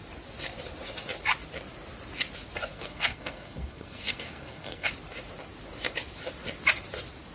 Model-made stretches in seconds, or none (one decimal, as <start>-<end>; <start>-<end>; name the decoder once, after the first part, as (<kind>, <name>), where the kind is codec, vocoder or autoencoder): 2.7-4.9 (codec, SNAC)